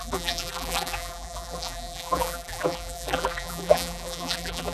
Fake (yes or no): yes